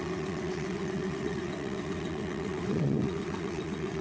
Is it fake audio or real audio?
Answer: fake